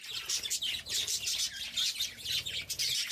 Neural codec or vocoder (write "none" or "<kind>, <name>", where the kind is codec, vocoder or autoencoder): none